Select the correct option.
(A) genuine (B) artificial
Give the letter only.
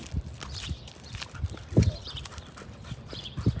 B